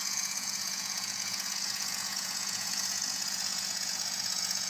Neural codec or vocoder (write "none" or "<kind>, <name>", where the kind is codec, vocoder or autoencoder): vocoder, Vocos